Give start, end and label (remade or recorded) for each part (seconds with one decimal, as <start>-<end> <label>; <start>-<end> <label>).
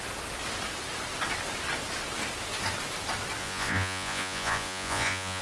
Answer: 0.0-3.4 recorded; 3.4-5.4 remade